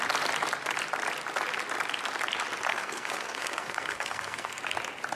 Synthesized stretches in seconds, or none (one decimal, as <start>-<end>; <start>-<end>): 2.7-4.6